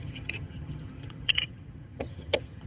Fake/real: fake